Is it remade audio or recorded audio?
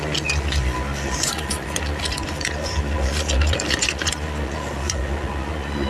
remade